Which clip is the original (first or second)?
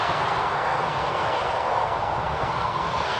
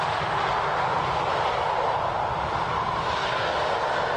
second